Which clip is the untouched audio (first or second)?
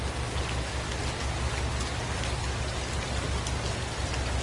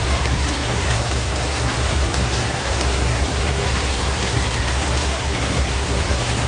first